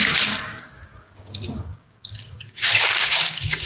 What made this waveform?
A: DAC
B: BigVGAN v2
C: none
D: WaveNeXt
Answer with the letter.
A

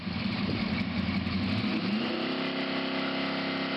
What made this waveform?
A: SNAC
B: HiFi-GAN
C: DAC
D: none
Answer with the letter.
D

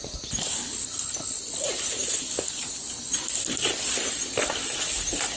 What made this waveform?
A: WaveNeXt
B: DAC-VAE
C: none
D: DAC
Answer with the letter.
C